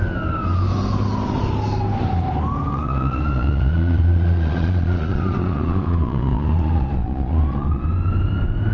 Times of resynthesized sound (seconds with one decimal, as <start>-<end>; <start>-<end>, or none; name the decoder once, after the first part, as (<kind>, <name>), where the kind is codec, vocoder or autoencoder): 2.7-7.9 (vocoder, Vocos)